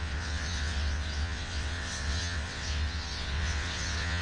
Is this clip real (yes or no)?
no